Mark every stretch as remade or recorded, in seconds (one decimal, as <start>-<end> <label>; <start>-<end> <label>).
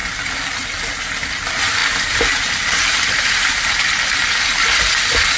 0.0-5.4 recorded